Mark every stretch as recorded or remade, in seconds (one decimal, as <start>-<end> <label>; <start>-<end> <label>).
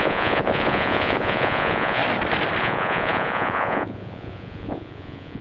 0.0-2.0 remade; 2.0-2.6 recorded; 2.6-5.4 remade